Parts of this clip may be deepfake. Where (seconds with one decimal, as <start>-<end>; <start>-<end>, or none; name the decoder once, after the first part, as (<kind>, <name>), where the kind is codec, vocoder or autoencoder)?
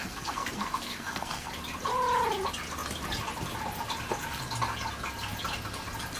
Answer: 0.0-1.5 (codec, SNAC)